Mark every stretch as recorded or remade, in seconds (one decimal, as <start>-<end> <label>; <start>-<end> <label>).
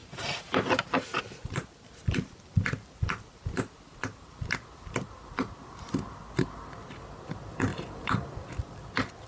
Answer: 0.0-7.7 recorded; 7.7-8.4 remade; 8.4-9.3 recorded